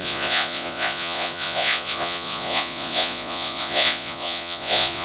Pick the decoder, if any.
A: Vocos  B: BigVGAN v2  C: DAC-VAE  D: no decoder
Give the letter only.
A